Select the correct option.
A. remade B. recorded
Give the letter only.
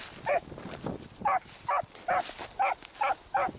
B